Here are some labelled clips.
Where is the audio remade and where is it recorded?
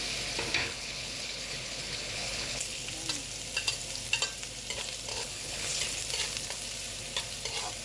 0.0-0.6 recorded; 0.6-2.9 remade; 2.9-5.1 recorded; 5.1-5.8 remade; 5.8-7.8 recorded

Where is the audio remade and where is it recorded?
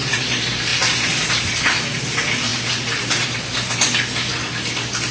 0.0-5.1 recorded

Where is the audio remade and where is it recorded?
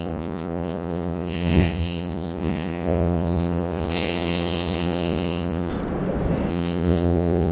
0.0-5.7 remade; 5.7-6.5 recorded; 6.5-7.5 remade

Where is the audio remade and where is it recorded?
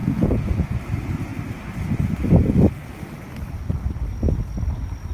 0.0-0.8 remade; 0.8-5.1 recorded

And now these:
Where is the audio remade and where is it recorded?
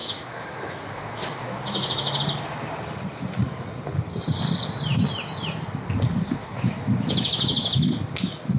0.0-2.2 remade; 2.2-6.4 recorded; 6.4-7.7 remade; 7.7-8.6 recorded